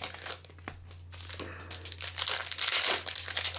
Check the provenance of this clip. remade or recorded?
recorded